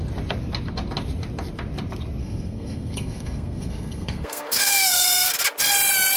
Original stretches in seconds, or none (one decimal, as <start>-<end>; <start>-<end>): 0.0-2.2; 5.3-6.2